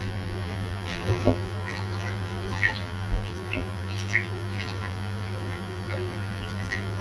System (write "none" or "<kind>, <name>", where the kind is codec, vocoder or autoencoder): vocoder, BigVGAN v2